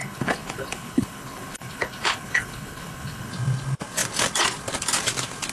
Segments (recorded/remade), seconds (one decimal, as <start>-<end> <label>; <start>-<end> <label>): 0.0-3.3 remade; 3.3-5.5 recorded